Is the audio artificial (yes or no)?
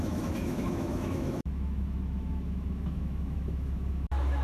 yes